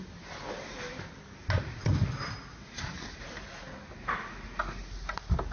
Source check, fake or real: real